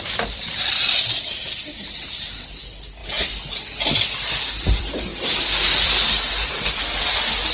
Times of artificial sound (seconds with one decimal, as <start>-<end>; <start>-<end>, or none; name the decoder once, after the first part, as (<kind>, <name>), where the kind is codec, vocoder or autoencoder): 0.0-7.5 (vocoder, BigVGAN v2)